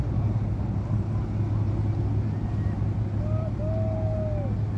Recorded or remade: recorded